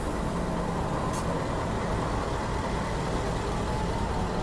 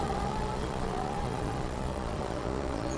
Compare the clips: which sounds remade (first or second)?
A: second